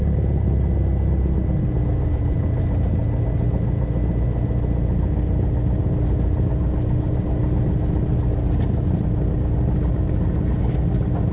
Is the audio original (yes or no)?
yes